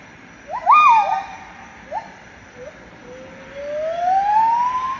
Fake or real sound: real